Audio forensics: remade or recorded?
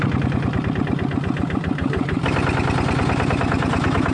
recorded